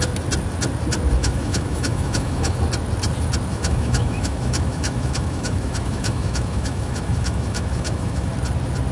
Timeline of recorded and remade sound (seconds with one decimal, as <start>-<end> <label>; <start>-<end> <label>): 0.0-1.2 recorded; 1.2-2.6 remade; 2.6-3.5 recorded; 3.5-8.3 remade; 8.3-8.9 recorded